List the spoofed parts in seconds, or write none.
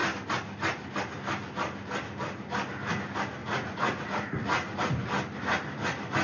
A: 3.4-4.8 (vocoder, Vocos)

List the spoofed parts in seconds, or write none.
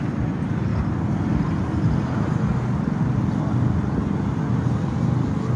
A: none